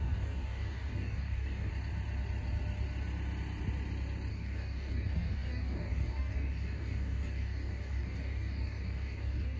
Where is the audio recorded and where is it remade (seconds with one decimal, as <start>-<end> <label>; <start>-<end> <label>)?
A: 0.0-1.7 remade; 1.7-4.3 recorded; 4.3-9.6 remade